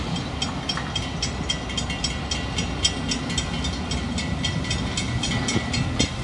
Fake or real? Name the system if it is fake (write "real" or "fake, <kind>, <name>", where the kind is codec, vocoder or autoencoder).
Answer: real